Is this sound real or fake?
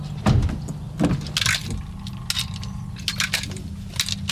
real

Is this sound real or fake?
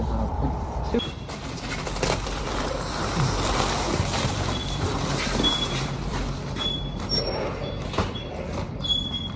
fake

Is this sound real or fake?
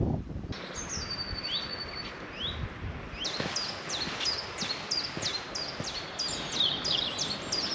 real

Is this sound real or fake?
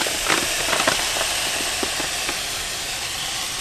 fake